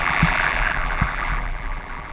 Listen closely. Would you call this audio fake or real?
fake